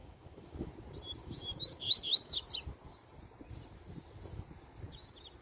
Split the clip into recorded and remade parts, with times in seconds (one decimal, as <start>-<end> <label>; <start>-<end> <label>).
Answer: 0.0-0.7 remade; 0.7-1.2 recorded; 1.2-2.5 remade; 2.5-5.4 recorded